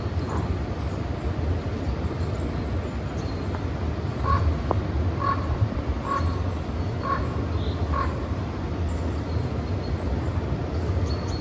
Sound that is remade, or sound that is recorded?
recorded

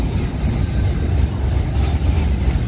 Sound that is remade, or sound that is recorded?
recorded